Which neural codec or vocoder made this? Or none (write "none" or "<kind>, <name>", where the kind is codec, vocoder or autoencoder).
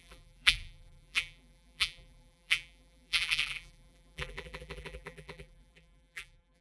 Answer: vocoder, BigVGAN v2